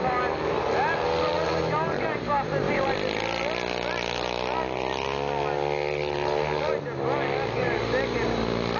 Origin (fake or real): real